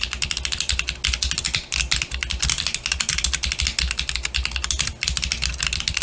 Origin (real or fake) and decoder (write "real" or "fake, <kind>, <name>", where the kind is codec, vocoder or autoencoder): real